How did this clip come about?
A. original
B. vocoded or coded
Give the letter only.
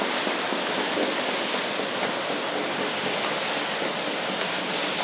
A